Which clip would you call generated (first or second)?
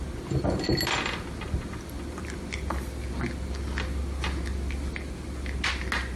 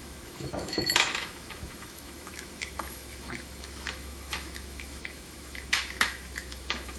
second